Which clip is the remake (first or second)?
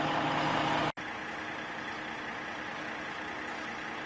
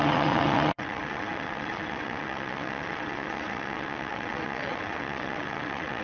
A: second